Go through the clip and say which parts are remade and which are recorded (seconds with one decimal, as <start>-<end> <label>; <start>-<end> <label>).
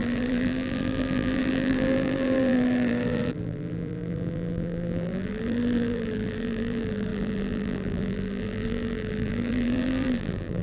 0.0-10.6 remade